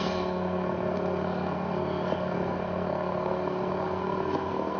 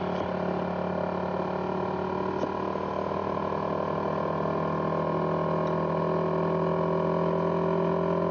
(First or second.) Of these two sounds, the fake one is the first